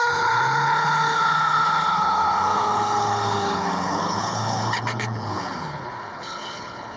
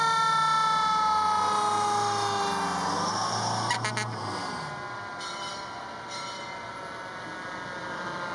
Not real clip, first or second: first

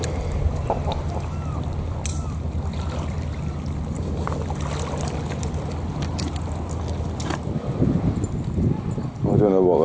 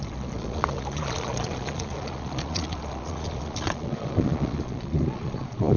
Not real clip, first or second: second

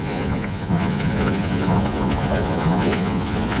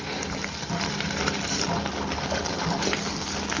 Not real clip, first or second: first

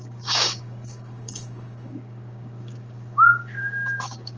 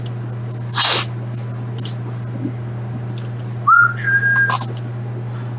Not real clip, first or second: first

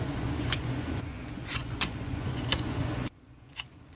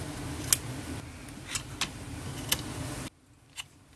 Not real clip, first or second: first